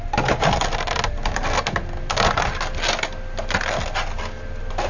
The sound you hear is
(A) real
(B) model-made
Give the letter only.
A